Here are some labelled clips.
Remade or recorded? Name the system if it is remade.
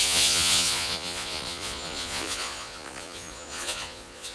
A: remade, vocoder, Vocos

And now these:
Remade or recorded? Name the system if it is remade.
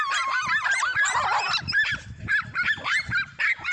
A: recorded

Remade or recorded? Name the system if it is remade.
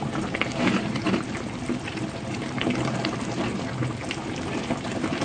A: recorded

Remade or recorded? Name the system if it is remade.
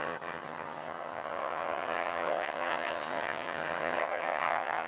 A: remade, vocoder, HiFi-GAN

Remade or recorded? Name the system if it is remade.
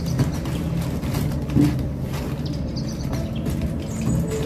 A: recorded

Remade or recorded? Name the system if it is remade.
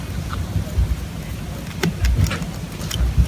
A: recorded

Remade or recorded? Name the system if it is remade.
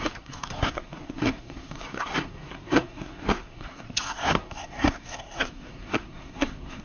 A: remade, codec, SNAC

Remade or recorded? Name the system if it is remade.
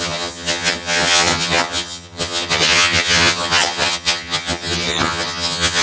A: remade, vocoder, HiFi-GAN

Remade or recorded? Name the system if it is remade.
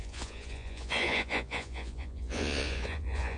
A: remade, vocoder, Vocos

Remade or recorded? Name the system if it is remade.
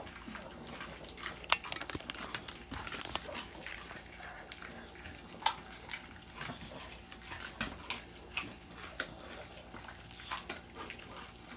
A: recorded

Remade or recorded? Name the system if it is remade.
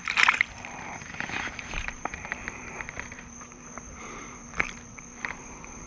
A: remade, vocoder, BigVGAN v2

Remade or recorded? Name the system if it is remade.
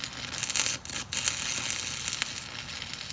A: recorded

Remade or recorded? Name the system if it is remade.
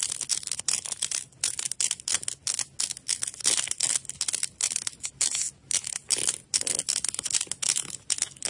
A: recorded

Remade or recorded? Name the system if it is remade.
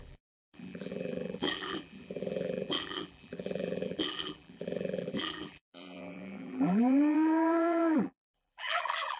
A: remade, vocoder, BigVGAN v2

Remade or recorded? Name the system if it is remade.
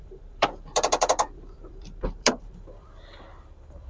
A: remade, vocoder, BigVGAN v2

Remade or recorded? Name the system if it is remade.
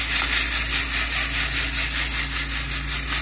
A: recorded